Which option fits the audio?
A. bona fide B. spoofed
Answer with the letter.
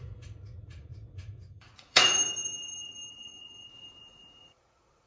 B